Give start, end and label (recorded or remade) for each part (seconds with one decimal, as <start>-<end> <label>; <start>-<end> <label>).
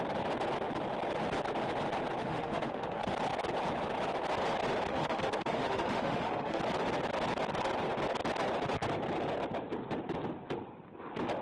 0.0-2.2 recorded; 2.2-3.1 remade; 3.1-4.9 recorded; 4.9-6.6 remade; 6.6-11.4 recorded